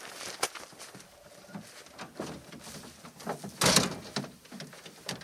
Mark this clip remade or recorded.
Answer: recorded